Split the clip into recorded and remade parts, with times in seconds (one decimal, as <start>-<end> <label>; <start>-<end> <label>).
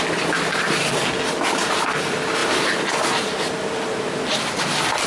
0.0-5.1 recorded